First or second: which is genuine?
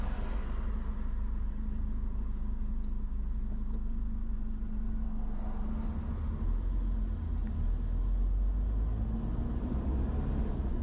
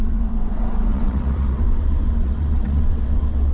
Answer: first